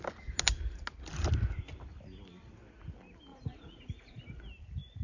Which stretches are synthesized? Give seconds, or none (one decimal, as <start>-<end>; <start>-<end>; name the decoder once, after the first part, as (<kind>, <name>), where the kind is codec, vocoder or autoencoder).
3.3-4.2 (vocoder, Vocos)